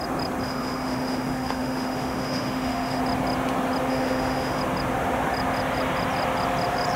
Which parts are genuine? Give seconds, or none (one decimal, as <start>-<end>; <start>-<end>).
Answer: 0.0-0.4; 3.0-3.9; 4.6-7.0